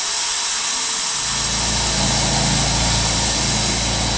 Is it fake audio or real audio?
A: real